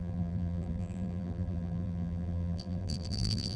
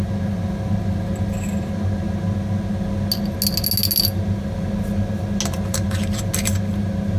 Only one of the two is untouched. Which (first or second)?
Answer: second